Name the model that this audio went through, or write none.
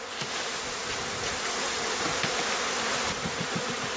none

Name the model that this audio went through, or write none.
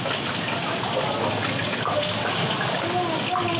none